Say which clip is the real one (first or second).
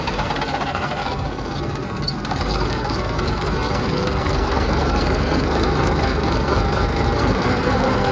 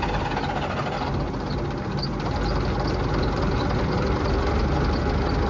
second